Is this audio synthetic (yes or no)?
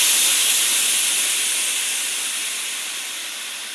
no